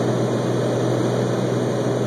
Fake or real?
real